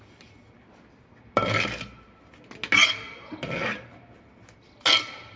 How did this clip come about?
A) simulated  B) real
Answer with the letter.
B